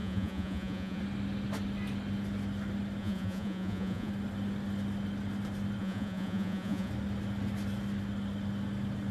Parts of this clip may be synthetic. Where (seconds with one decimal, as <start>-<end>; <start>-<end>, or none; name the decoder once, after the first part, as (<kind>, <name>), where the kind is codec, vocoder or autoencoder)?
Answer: 0.0-1.0 (vocoder, Vocos); 3.0-4.1; 5.8-6.9